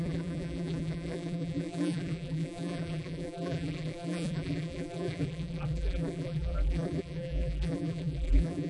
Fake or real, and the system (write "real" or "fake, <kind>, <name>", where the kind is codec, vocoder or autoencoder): fake, vocoder, BigVGAN v2